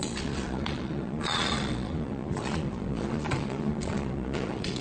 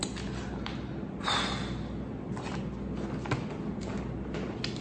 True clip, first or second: second